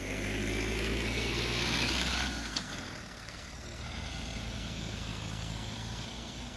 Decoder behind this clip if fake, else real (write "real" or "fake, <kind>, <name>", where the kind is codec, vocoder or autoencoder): fake, codec, SNAC